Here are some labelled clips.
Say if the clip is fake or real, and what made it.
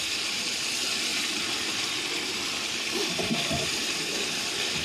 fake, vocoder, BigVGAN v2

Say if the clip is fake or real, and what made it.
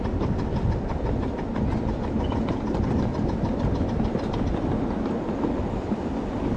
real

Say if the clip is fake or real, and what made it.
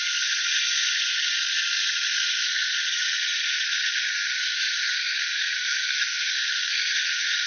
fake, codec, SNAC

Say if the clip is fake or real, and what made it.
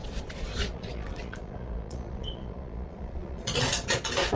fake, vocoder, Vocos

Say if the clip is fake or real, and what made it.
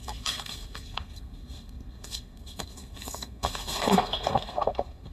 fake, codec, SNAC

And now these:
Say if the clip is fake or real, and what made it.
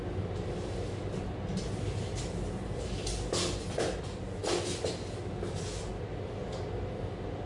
real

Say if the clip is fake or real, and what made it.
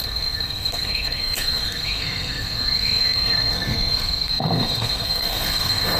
fake, codec, SNAC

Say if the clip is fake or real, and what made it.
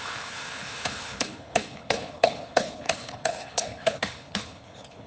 fake, codec, HILCodec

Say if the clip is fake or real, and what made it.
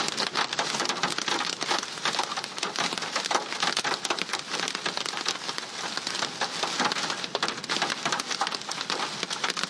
real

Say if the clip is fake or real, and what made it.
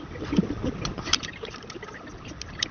real